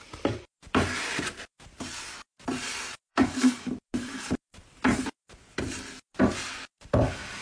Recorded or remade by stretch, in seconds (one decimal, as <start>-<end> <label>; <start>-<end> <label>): 0.0-3.1 recorded; 3.1-3.7 remade; 3.7-7.4 recorded